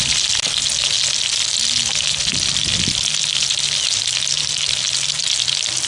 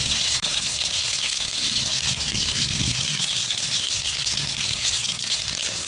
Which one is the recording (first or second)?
first